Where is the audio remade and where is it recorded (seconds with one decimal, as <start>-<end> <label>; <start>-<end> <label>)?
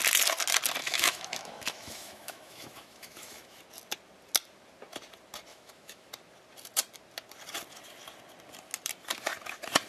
0.0-0.8 recorded; 0.8-3.6 remade; 3.6-5.5 recorded; 5.5-6.1 remade; 6.1-9.9 recorded